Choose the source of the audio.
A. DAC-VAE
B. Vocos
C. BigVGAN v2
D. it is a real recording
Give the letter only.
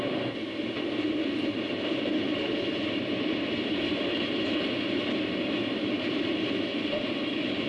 C